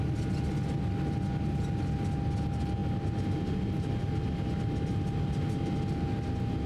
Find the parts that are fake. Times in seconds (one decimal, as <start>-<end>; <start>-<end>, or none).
none